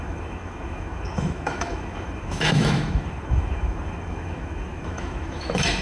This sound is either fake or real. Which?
fake